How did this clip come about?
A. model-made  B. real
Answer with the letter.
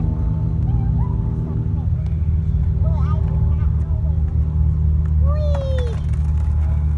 B